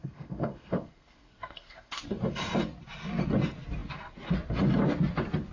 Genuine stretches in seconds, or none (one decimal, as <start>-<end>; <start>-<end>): 2.0-5.5